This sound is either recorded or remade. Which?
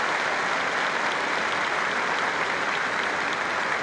recorded